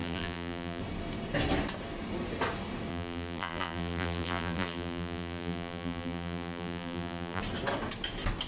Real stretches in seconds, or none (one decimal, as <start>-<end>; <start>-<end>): 0.8-2.9; 7.4-8.5